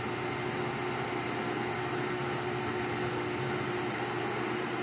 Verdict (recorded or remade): recorded